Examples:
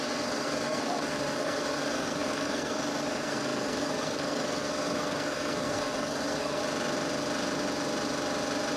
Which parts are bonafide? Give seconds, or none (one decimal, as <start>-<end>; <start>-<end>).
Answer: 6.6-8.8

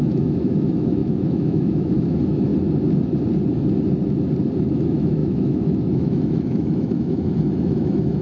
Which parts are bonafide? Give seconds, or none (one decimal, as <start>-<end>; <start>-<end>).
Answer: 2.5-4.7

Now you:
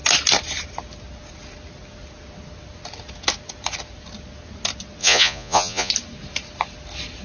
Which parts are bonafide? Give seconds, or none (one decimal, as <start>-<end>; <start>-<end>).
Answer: 0.0-5.0; 5.9-7.2